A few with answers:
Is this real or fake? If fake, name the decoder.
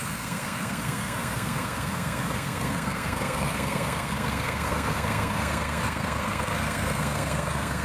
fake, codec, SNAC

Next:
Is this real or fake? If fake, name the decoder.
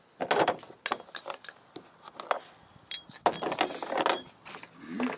real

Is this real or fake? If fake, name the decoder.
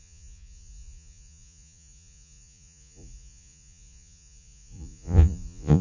fake, vocoder, Vocos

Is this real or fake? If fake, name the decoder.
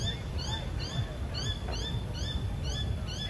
real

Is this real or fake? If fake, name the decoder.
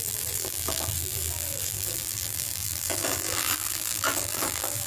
fake, vocoder, BigVGAN v2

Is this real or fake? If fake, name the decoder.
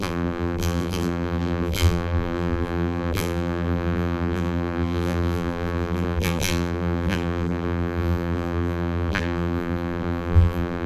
fake, vocoder, BigVGAN v2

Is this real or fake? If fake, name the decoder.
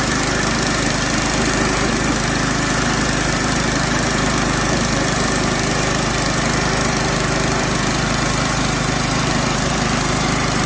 fake, vocoder, BigVGAN v2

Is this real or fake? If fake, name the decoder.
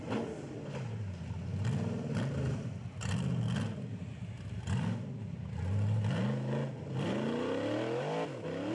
real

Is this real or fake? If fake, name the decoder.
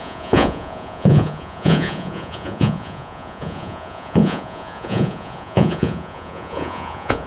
fake, vocoder, Vocos